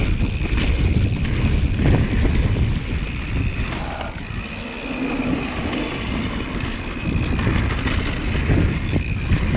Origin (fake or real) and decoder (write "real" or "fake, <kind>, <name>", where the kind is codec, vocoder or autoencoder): real